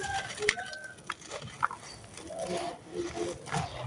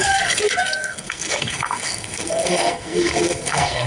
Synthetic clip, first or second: second